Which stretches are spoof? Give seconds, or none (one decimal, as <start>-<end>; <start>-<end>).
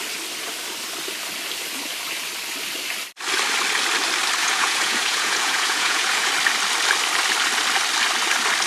4.4-6.3